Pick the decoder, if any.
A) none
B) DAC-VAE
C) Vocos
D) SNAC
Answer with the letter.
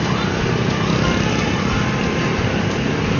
A